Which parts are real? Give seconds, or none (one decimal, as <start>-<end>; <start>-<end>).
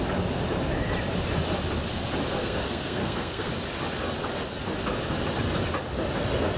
0.0-2.4; 3.5-6.6